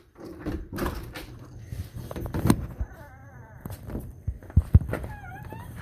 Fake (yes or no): yes